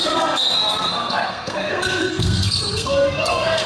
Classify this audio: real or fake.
fake